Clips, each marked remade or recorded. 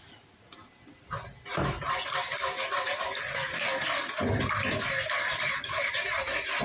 recorded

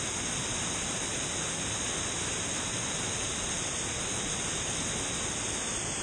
recorded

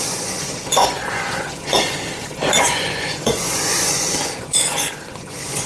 remade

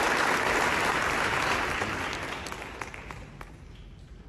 recorded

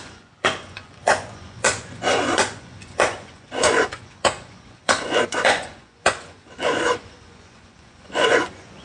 remade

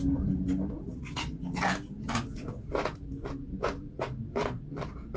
recorded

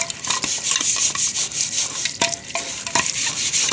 recorded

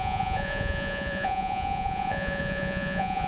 remade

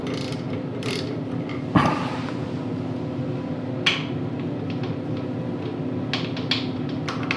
recorded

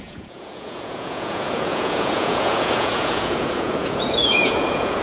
remade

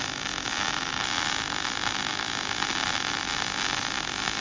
recorded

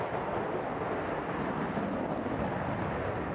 recorded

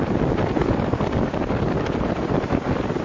recorded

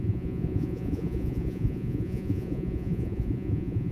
remade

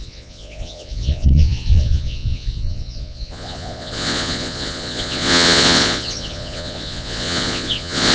remade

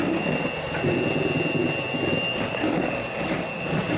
recorded